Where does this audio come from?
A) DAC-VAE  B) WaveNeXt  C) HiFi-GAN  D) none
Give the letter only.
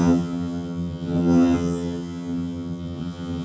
C